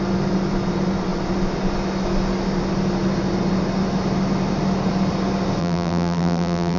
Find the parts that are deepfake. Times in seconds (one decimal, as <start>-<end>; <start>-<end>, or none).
5.6-6.8